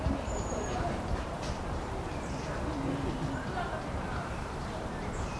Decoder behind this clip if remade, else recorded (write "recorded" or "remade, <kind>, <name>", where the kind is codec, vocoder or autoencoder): remade, vocoder, BigVGAN v2